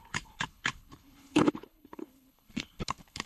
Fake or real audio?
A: fake